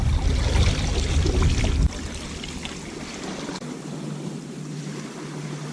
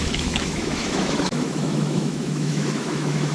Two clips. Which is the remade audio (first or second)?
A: second